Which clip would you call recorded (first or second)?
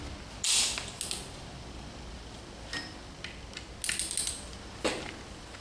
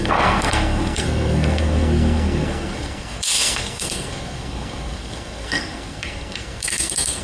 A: first